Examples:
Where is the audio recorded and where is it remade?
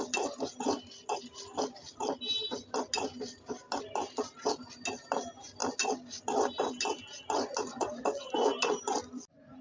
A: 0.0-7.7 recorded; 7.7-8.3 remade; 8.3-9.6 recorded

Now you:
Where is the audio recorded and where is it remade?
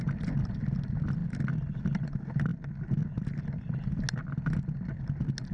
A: 0.0-5.5 recorded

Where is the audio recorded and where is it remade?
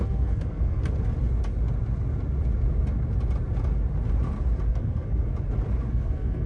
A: 0.0-0.8 remade; 0.8-4.7 recorded; 4.7-5.3 remade; 5.3-5.9 recorded; 5.9-6.5 remade